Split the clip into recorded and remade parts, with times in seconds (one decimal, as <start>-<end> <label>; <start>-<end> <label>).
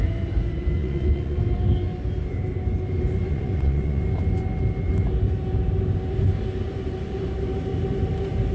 0.0-0.8 recorded; 0.8-1.4 remade; 1.4-3.3 recorded; 3.3-4.0 remade; 4.0-8.5 recorded